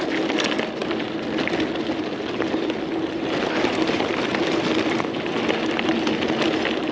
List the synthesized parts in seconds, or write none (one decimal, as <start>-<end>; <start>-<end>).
none